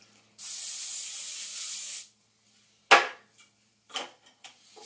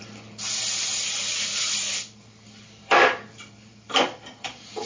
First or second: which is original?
first